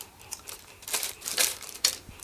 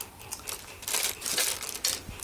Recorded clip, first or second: second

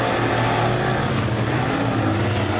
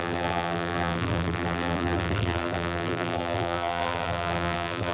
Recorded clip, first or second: first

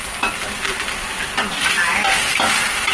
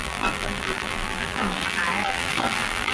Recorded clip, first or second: first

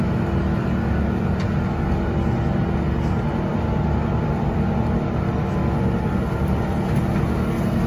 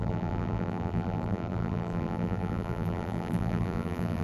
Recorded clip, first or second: first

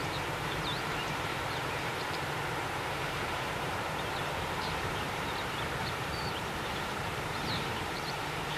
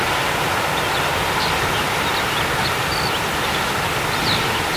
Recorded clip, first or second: second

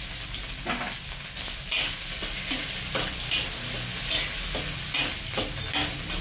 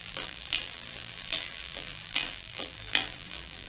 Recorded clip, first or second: first